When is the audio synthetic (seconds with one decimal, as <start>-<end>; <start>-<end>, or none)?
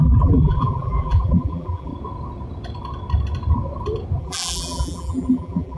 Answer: 0.0-1.9; 4.2-5.8